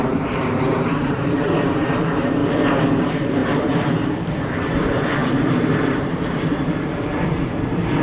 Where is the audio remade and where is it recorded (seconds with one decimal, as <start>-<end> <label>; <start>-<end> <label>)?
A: 0.0-2.4 remade; 2.4-3.0 recorded; 3.0-8.0 remade